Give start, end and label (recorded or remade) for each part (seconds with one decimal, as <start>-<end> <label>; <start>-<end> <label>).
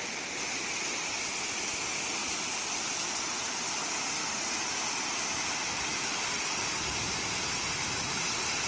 0.0-8.7 recorded